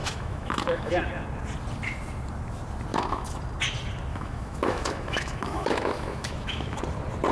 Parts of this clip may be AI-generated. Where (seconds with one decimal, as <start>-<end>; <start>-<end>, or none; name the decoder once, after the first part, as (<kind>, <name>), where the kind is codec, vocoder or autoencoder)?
0.0-0.9 (autoencoder, DAC-VAE); 2.9-3.4; 4.1-6.8